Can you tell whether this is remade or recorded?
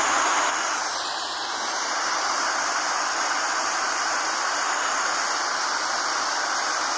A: recorded